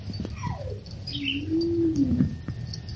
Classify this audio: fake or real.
real